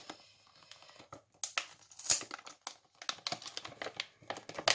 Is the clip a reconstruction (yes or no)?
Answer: no